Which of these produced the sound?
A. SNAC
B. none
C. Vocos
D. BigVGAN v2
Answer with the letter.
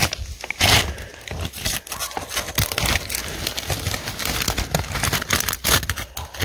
B